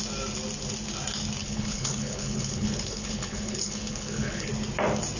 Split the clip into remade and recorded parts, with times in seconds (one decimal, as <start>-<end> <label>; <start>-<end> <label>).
0.0-1.4 recorded; 1.4-4.5 remade; 4.5-5.2 recorded